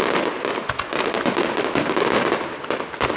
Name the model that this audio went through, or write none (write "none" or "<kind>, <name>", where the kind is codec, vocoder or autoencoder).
none